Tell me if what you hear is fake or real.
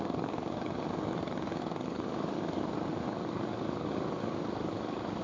fake